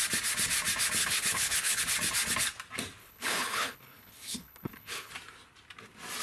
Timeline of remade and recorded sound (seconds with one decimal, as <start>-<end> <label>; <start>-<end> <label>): 0.0-1.0 recorded; 1.0-1.8 remade; 1.8-3.0 recorded; 3.0-5.1 remade; 5.1-6.2 recorded